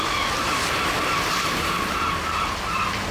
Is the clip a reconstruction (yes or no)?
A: no